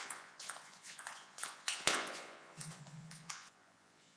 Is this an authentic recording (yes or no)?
no